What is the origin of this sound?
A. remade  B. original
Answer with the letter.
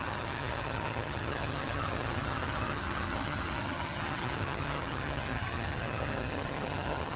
A